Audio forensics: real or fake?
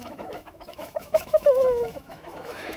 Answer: fake